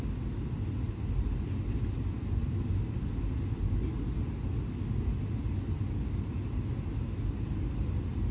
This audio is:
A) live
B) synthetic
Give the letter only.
A